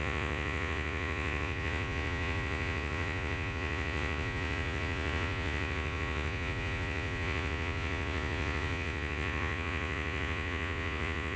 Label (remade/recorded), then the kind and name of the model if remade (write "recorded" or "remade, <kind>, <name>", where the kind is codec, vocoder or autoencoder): remade, vocoder, Vocos